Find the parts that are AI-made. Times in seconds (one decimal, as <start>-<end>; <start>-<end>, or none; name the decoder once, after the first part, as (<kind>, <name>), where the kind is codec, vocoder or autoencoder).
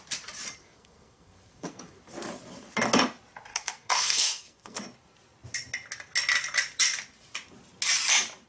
0.6-2.0 (codec, SNAC); 3.5-4.8